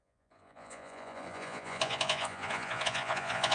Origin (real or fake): fake